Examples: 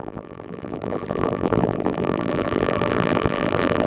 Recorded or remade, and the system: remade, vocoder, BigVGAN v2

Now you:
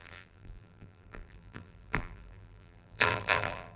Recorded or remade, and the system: remade, vocoder, BigVGAN v2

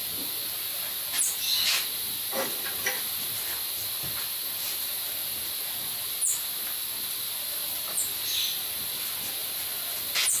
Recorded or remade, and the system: recorded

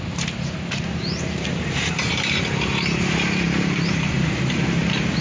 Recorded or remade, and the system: remade, vocoder, BigVGAN v2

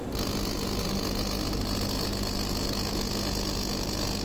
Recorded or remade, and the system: recorded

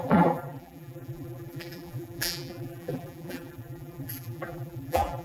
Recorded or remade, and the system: remade, vocoder, BigVGAN v2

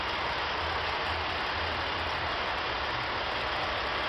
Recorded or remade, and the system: recorded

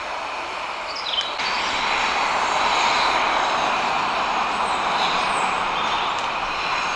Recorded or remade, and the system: recorded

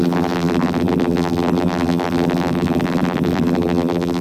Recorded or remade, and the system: remade, vocoder, BigVGAN v2